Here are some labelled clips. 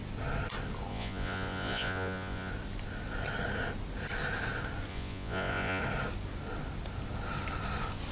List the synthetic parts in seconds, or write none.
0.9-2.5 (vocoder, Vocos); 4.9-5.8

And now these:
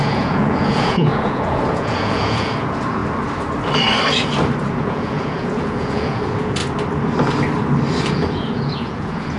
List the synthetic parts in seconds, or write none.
0.0-3.0 (vocoder, Vocos); 4.6-6.6; 8.1-9.4

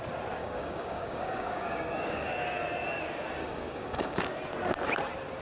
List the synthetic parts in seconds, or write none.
0.4-2.3 (codec, DAC); 3.4-4.2

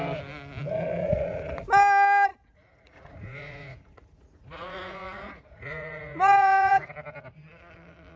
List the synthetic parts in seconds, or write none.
1.0-1.6 (vocoder, Vocos); 2.3-6.9

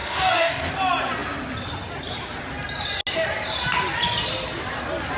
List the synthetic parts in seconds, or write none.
0.0-0.7 (codec, DAC)